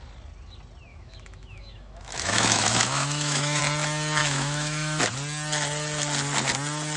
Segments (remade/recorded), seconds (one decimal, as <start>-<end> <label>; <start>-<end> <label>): 0.0-0.9 recorded; 0.9-3.6 remade; 3.6-4.2 recorded; 4.2-5.0 remade; 5.0-7.0 recorded